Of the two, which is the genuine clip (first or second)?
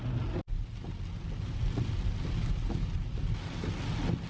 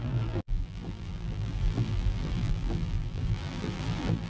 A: first